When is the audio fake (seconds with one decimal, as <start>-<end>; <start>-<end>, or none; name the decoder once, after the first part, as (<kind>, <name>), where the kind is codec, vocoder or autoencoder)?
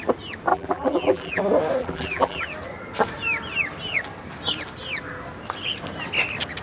0.5-1.4 (vocoder, BigVGAN v2); 1.8-2.4